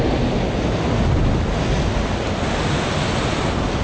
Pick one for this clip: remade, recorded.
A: recorded